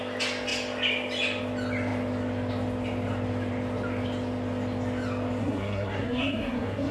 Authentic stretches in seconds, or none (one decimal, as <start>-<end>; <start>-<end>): 0.0-5.4